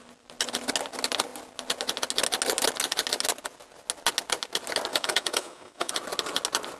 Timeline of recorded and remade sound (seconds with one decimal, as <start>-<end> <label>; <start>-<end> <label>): 0.0-4.9 recorded; 4.9-5.9 remade; 5.9-6.8 recorded